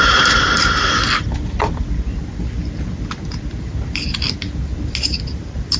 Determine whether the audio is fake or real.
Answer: real